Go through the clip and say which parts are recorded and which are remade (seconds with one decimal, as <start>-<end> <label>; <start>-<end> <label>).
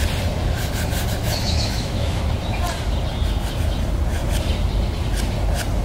0.0-1.2 recorded; 1.2-2.2 remade; 2.2-5.8 recorded